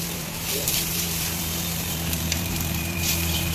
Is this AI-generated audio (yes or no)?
yes